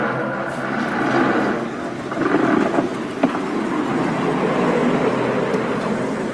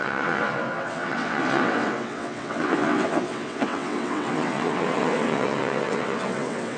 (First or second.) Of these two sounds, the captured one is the first